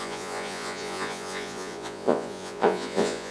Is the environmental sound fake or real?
fake